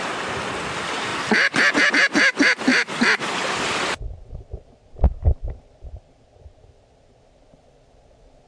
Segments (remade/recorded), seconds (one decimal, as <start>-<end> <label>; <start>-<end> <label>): 0.0-1.1 recorded; 1.1-1.9 remade; 1.9-2.7 recorded; 2.7-7.2 remade; 7.2-8.5 recorded